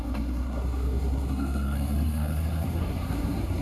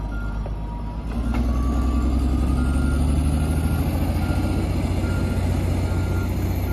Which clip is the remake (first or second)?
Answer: first